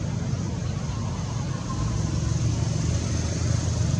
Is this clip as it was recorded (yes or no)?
yes